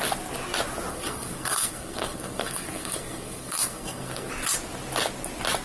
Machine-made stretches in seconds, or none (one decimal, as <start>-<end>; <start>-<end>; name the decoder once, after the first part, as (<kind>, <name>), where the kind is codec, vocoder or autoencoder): 0.9-4.3 (codec, SNAC)